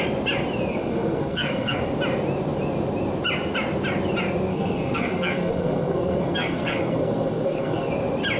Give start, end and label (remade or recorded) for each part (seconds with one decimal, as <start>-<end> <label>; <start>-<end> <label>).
0.0-0.7 recorded; 0.7-1.8 remade; 1.8-4.5 recorded; 4.5-7.9 remade; 7.9-8.4 recorded